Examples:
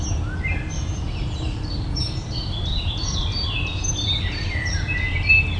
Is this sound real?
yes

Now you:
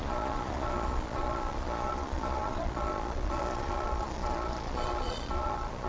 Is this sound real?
no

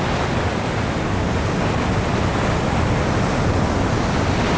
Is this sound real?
yes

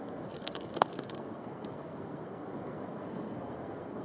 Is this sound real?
no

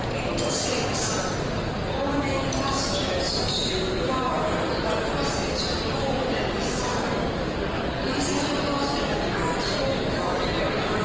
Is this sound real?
yes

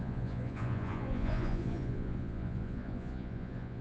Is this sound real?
no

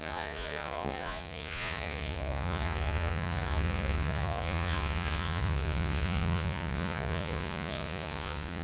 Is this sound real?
no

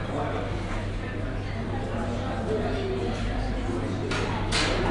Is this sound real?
yes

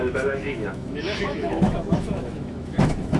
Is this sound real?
no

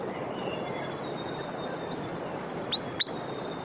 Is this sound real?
yes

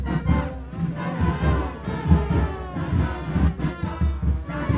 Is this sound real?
yes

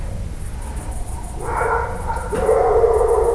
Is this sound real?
yes